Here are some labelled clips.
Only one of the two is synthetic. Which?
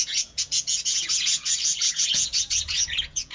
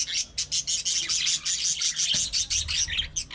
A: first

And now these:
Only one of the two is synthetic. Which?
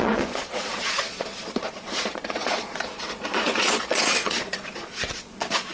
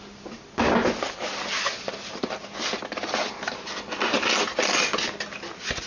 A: first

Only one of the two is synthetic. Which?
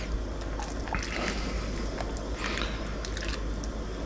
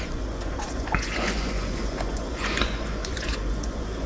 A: second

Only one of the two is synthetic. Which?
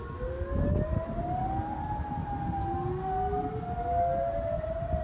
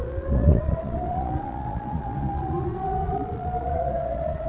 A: second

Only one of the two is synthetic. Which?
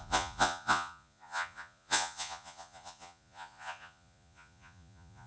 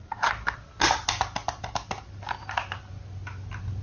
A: first